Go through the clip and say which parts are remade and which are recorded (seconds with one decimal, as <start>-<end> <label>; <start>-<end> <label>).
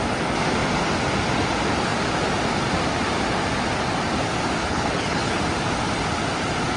0.0-4.6 recorded; 4.6-5.4 remade; 5.4-6.8 recorded